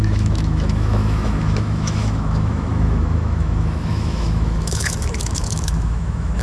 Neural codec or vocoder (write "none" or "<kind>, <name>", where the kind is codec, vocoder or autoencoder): autoencoder, DAC-VAE